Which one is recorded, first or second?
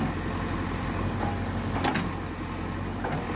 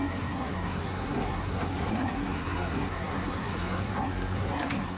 first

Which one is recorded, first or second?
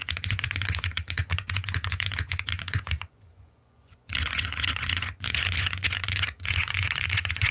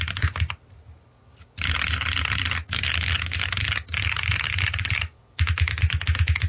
second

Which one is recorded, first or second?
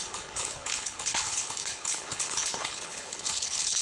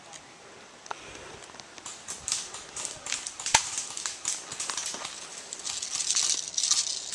second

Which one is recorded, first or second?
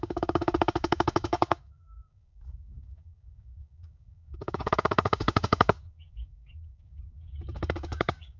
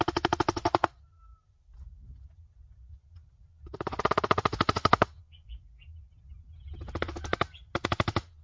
second